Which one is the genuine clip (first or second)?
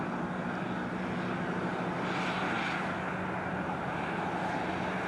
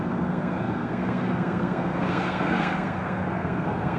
first